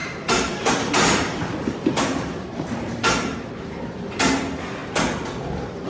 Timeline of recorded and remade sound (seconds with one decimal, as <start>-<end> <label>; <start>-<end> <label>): 0.0-3.5 remade; 3.5-5.9 recorded